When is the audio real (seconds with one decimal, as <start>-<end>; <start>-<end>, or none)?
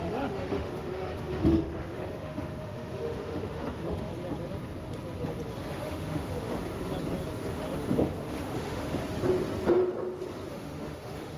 4.1-5.7; 6.6-7.5; 9.0-10.5